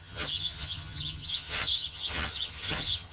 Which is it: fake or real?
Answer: fake